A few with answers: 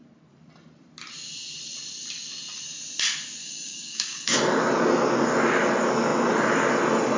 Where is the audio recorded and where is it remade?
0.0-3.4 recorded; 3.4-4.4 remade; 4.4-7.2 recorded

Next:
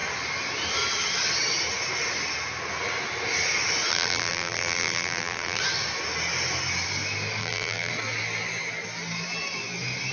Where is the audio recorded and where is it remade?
0.0-3.9 recorded; 3.9-5.6 remade; 5.6-7.4 recorded; 7.4-7.9 remade; 7.9-10.1 recorded

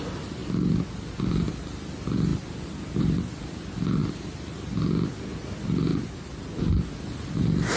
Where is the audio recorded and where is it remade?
0.0-7.8 recorded

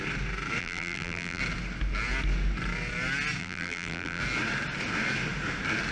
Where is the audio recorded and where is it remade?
0.0-0.6 recorded; 0.6-1.4 remade; 1.4-3.4 recorded; 3.4-4.2 remade; 4.2-5.9 recorded

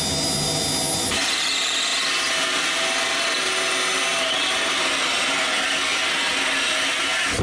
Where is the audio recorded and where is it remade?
0.0-7.4 recorded